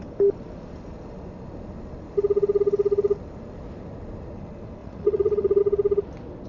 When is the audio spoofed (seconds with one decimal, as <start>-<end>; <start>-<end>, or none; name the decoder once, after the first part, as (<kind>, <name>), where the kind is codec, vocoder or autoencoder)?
4.8-5.6 (vocoder, Vocos)